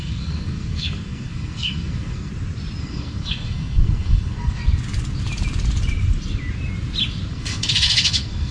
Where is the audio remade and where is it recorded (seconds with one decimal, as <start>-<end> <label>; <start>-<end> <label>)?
0.0-2.3 remade; 2.3-2.8 recorded; 2.8-4.6 remade; 4.6-7.3 recorded; 7.3-8.5 remade